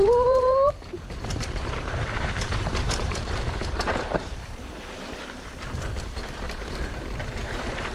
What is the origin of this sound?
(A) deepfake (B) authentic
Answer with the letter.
A